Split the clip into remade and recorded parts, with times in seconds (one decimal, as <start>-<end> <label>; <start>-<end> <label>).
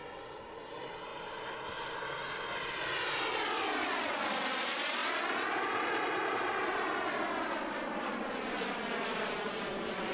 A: 0.0-10.1 recorded